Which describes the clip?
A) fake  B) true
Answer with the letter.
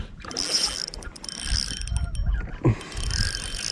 B